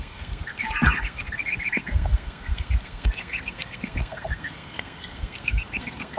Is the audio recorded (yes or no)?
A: no